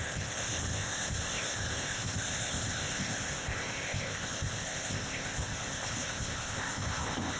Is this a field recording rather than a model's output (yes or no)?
no